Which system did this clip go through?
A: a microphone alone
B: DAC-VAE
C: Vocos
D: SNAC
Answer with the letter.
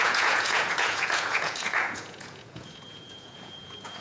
C